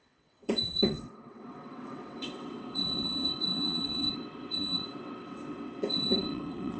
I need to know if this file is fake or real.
fake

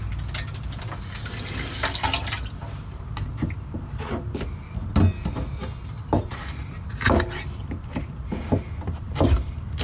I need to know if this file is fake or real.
real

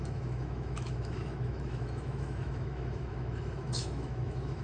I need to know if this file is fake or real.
fake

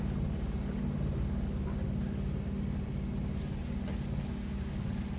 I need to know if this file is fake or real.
real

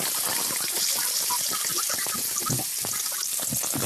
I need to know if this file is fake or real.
real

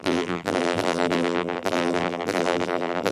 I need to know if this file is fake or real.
fake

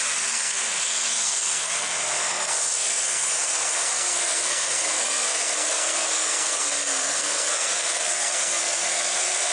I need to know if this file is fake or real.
fake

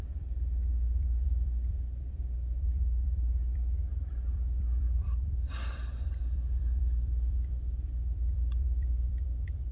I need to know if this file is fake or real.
fake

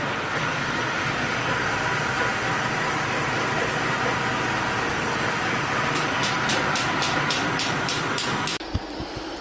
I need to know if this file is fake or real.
fake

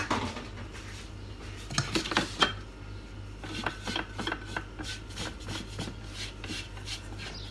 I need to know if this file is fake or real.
real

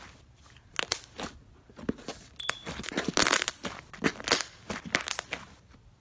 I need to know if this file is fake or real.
real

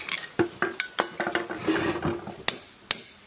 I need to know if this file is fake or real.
real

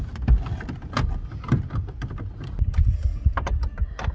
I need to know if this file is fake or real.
real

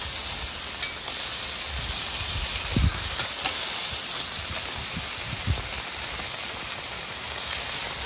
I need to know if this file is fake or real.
real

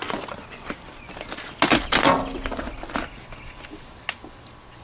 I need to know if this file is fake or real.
real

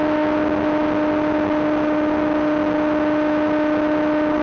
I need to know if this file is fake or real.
real